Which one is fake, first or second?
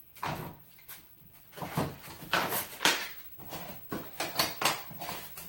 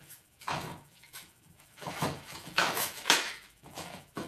second